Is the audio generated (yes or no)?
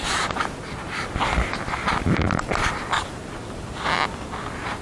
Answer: no